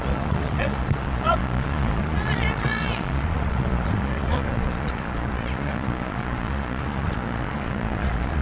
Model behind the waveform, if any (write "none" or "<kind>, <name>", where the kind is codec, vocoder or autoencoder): vocoder, Vocos